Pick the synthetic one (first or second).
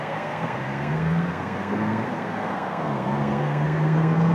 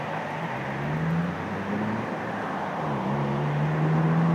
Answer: first